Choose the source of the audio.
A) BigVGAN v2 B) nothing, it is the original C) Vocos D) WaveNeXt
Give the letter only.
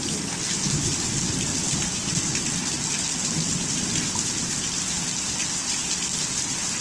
B